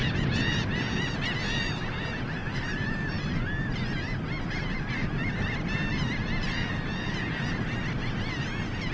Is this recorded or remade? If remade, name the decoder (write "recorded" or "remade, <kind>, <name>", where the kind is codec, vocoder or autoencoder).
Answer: recorded